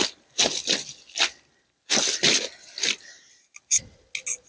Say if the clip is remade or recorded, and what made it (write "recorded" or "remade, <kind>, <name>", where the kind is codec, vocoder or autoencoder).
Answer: recorded